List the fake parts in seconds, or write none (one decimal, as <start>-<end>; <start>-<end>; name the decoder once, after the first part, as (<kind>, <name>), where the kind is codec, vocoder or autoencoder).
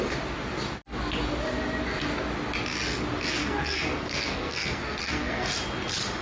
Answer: 3.4-5.5 (codec, SNAC)